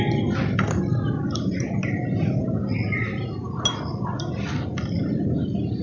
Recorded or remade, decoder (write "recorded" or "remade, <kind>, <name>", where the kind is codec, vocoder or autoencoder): recorded